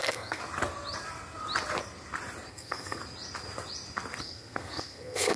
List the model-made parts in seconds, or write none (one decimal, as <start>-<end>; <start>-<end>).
0.0-0.4; 2.5-3.0; 4.2-5.4

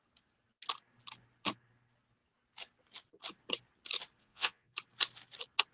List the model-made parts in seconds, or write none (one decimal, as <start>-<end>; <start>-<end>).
4.2-4.7

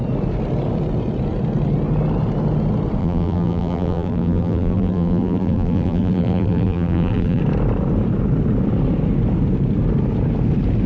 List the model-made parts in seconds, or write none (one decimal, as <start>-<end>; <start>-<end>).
3.0-7.4

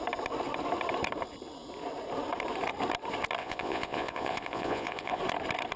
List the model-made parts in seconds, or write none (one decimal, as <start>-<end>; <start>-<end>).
3.4-5.2

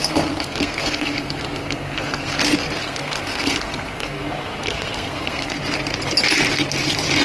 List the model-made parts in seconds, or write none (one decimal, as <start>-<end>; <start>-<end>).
0.0-2.4; 2.8-5.6

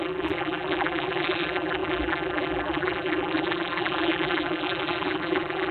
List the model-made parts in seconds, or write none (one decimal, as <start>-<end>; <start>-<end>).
0.0-5.7